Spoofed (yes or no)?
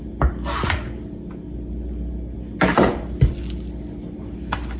no